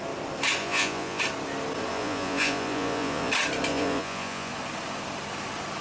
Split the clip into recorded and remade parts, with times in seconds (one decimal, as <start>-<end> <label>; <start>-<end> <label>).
0.0-0.6 recorded; 0.6-1.2 remade; 1.2-1.9 recorded; 1.9-3.3 remade; 3.3-3.7 recorded; 3.7-4.5 remade; 4.5-5.8 recorded